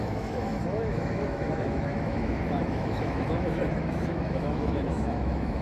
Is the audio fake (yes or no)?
yes